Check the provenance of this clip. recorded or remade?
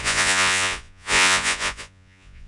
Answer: remade